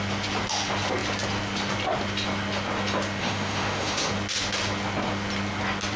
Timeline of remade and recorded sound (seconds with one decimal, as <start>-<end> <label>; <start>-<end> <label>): 0.0-3.2 recorded; 3.2-4.1 remade; 4.1-6.0 recorded